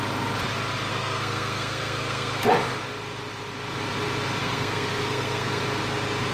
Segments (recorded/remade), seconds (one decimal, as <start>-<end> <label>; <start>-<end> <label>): 0.0-0.9 recorded; 0.9-2.5 remade; 2.5-4.4 recorded; 4.4-5.6 remade; 5.6-6.3 recorded

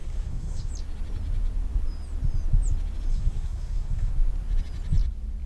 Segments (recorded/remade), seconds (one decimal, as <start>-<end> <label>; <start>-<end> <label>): 0.0-0.7 remade; 0.7-3.1 recorded; 3.1-4.1 remade; 4.1-5.5 recorded